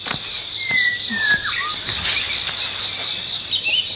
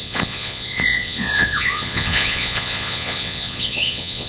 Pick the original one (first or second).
first